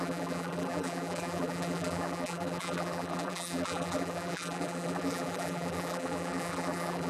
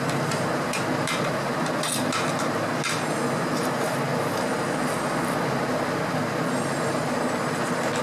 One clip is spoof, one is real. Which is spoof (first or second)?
first